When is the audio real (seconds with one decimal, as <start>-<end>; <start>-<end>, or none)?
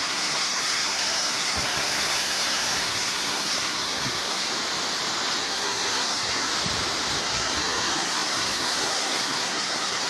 4.5-5.4; 6.5-7.2